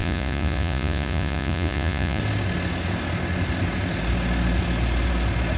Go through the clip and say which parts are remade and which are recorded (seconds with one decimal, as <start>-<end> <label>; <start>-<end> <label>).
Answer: 0.0-2.2 remade; 2.2-5.6 recorded